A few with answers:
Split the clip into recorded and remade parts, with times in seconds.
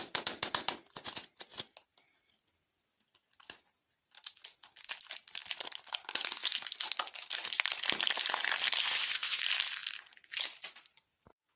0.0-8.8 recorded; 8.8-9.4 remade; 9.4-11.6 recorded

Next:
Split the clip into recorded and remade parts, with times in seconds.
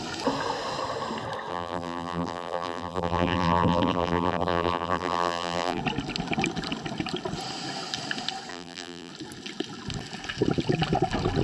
0.0-1.5 recorded; 1.5-5.8 remade; 5.8-8.5 recorded; 8.5-9.1 remade; 9.1-11.4 recorded